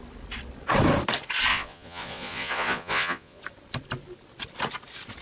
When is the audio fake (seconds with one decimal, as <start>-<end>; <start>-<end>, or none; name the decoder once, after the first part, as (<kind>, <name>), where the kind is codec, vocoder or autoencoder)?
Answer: 1.5-3.4 (vocoder, Vocos)

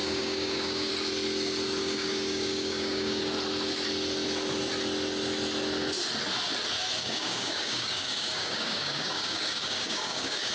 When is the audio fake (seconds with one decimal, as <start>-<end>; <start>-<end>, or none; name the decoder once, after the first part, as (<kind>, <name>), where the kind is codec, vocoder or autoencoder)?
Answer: 0.0-0.9 (codec, DAC); 1.8-3.2; 7.0-10.5

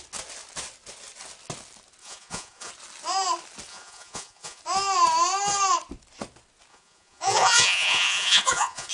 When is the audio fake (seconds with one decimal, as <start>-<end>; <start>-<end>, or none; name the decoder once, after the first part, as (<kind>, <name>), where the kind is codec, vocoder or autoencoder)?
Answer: 2.0-2.7 (vocoder, Vocos); 3.7-4.6; 6.7-8.9

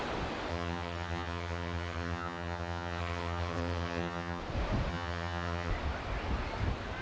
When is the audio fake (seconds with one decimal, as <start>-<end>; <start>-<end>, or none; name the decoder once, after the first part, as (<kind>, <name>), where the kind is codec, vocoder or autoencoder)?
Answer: 0.5-4.4 (vocoder, HiFi-GAN); 4.9-5.7